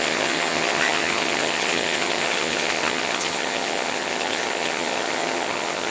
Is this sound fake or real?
fake